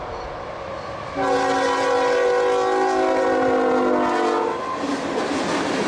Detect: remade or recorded recorded